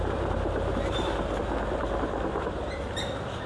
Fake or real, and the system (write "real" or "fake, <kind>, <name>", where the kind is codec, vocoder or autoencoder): fake, vocoder, BigVGAN v2